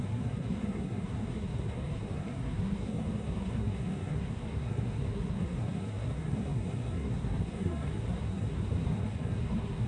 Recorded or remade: remade